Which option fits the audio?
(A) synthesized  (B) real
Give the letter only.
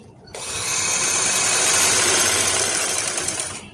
A